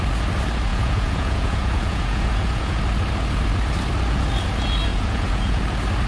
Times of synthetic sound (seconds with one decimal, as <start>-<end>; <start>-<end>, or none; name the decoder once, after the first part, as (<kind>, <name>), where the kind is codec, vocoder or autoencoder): 0.7-2.8 (vocoder, Vocos); 4.9-5.6